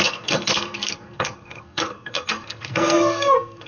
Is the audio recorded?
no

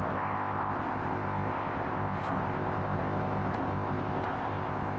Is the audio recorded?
no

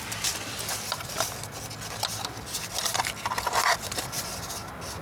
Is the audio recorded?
yes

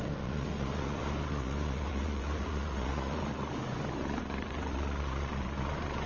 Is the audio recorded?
no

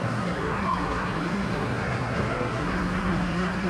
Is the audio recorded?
no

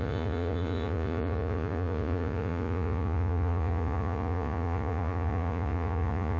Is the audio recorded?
no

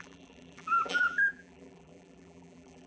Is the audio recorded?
no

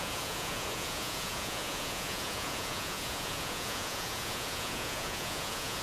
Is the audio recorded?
no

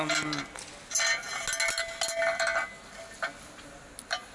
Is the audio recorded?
yes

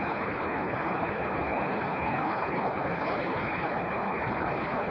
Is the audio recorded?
no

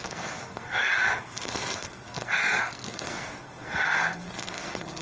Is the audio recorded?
no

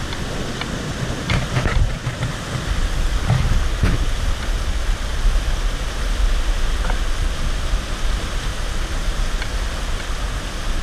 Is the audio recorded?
yes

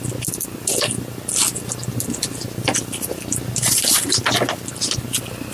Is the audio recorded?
yes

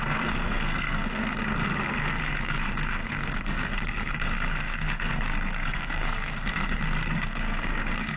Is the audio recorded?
no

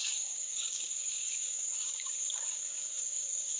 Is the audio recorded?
no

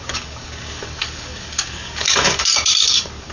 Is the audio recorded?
no